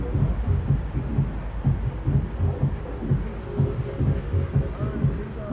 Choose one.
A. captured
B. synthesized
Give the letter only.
A